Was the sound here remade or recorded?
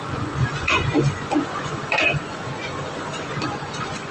remade